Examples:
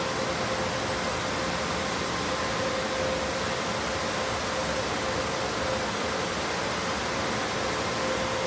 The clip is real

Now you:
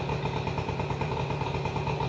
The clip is real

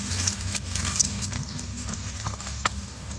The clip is fake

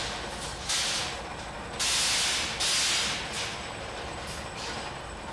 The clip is real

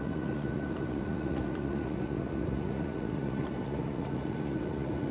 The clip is fake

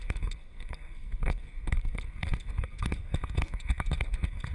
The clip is fake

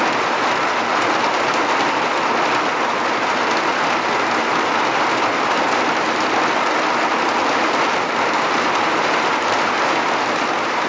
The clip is real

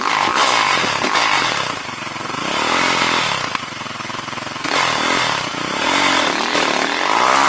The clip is real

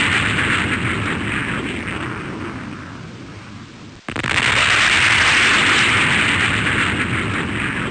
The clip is real